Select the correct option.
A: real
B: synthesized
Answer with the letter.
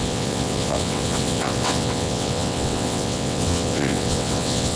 B